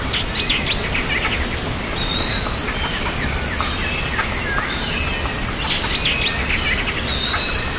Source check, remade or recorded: recorded